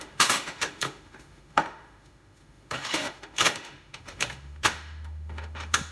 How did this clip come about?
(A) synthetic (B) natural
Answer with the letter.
A